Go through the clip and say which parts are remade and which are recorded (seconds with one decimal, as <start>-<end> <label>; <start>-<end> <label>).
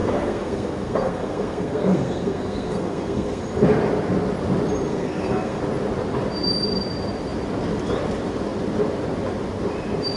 0.0-3.4 remade; 3.4-4.9 recorded; 4.9-5.6 remade; 5.6-10.2 recorded